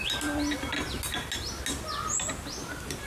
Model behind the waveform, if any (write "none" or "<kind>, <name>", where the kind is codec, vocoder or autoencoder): none